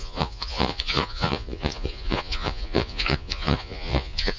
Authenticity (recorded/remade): remade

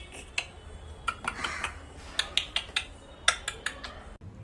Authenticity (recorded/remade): recorded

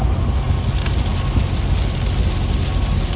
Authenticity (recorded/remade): recorded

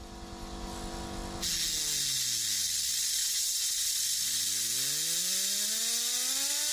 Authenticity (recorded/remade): recorded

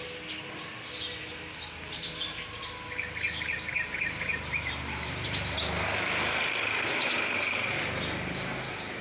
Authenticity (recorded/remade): recorded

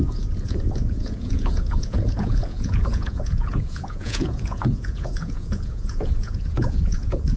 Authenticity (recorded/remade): remade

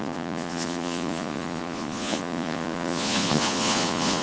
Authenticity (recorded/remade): remade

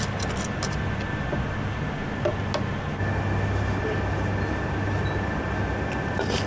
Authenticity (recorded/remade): recorded